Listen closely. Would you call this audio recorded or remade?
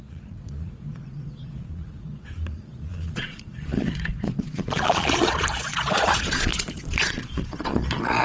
remade